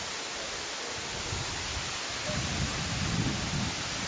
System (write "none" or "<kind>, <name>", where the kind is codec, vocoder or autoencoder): none